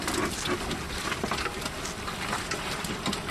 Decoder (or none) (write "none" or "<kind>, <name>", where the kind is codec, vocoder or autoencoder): none